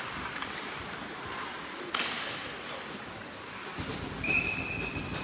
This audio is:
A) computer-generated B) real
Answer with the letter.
B